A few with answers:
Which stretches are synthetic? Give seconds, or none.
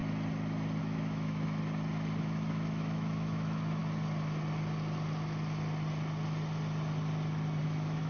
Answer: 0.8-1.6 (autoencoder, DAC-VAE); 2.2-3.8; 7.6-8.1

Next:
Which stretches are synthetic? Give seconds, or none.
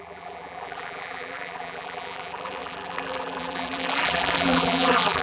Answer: 0.0-5.2 (vocoder, BigVGAN v2)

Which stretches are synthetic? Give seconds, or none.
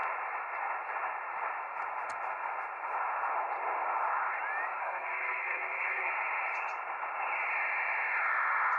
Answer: 4.8-6.1 (codec, SNAC)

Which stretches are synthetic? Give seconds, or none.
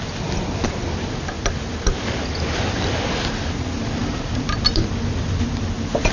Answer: none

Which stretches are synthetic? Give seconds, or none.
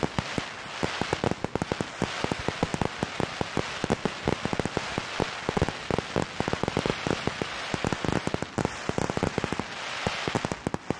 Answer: 2.7-3.4 (vocoder, BigVGAN v2); 6.9-9.1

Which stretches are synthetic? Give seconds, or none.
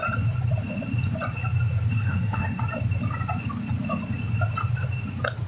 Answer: 1.9-2.6 (autoencoder, DAC-VAE)